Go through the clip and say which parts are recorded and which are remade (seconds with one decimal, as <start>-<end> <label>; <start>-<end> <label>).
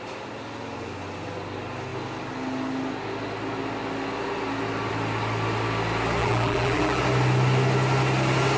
0.0-6.2 recorded; 6.2-7.0 remade; 7.0-8.6 recorded